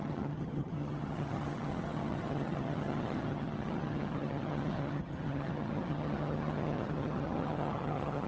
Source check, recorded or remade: remade